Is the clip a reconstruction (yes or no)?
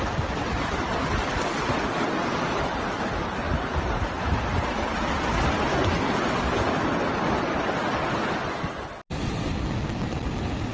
no